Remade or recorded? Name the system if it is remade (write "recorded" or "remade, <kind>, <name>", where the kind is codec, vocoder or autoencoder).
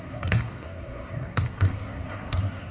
remade, codec, SNAC